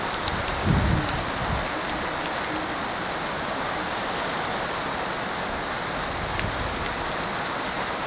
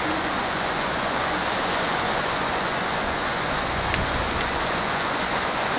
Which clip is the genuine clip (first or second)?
first